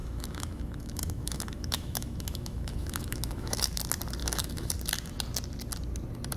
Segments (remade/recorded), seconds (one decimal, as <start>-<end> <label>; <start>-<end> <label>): 0.0-3.8 remade; 3.8-4.2 recorded; 4.2-4.7 remade; 4.7-6.4 recorded